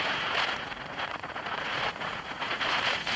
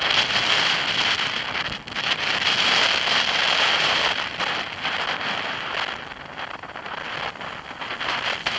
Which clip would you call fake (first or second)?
first